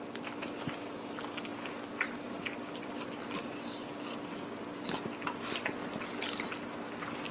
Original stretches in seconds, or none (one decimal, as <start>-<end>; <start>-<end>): 0.0-1.5; 3.2-7.3